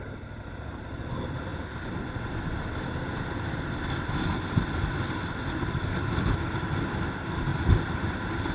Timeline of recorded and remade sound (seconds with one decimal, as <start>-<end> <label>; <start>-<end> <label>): 0.0-1.5 recorded; 1.5-2.7 remade; 2.7-7.5 recorded; 7.5-8.0 remade; 8.0-8.5 recorded